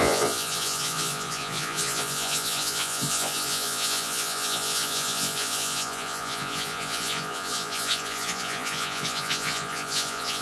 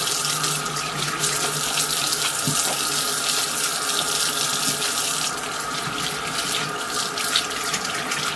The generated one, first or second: first